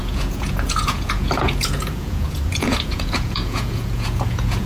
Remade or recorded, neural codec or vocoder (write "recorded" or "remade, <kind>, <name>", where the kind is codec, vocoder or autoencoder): remade, vocoder, Vocos